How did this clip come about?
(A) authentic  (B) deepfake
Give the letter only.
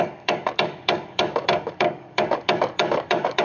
B